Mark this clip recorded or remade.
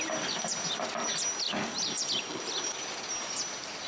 recorded